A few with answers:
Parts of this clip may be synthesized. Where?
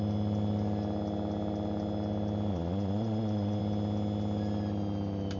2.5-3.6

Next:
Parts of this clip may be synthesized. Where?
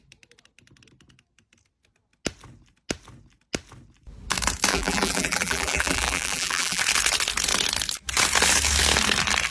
4.7-6.8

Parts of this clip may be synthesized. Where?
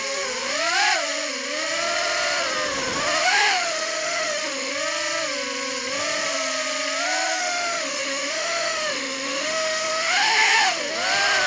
3.2-4.7; 7.4-10.8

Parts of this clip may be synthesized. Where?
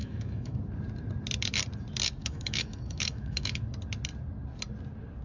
0.0-0.6; 2.2-3.6